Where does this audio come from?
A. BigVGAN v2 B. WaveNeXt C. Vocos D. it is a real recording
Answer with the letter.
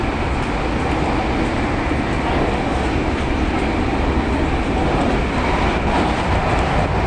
D